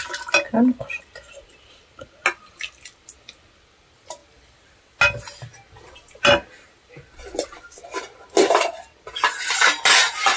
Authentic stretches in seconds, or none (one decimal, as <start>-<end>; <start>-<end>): 0.0-10.4